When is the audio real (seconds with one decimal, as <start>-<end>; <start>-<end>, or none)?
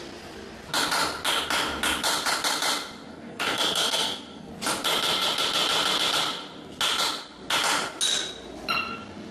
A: 0.0-3.1; 4.5-9.3